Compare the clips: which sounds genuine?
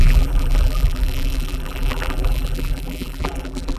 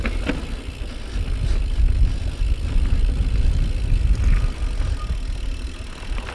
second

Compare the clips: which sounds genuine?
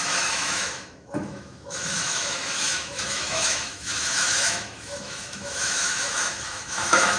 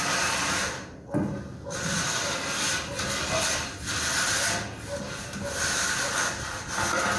second